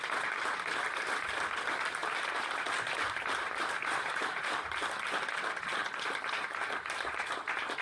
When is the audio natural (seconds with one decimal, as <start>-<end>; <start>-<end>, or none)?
0.0-2.0; 4.8-7.8